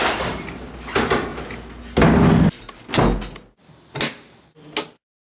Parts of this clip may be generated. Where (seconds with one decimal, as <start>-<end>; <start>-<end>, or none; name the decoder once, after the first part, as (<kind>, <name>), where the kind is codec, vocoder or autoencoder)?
none